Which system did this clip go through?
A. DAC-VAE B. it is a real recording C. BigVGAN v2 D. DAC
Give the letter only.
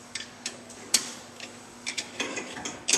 D